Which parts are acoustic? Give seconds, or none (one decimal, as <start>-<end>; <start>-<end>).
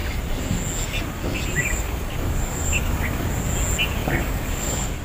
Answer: 0.0-1.6; 3.2-4.0